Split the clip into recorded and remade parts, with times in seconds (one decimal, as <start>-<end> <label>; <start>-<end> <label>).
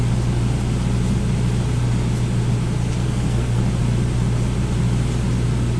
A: 0.0-3.0 recorded; 3.0-3.6 remade; 3.6-5.8 recorded